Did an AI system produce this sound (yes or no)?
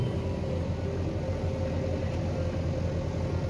no